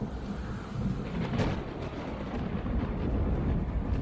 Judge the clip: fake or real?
real